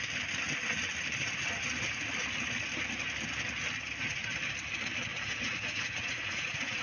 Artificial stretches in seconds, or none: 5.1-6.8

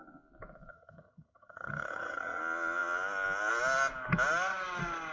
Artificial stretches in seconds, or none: 0.7-2.4

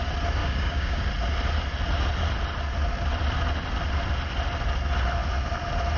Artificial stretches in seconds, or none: 0.4-1.0

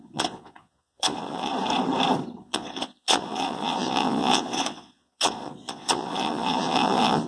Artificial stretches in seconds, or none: 0.0-1.5; 2.4-7.3

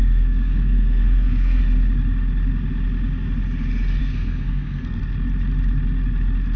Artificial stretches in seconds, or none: 0.0-1.6; 4.0-5.0

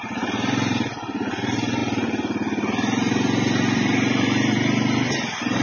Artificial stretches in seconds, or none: 0.0-5.6

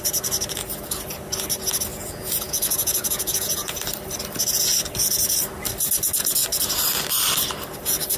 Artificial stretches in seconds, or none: 1.9-3.8

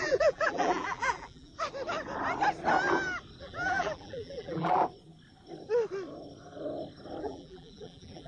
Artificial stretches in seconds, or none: 0.0-1.5; 3.4-4.8; 7.2-8.3